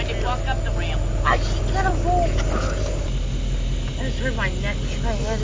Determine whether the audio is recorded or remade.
recorded